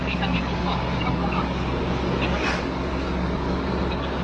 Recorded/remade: remade